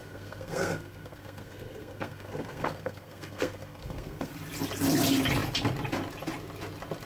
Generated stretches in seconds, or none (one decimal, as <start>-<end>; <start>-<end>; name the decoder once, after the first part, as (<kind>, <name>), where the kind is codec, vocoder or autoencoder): 0.0-4.3 (codec, SNAC)